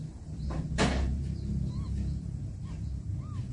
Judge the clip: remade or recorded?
remade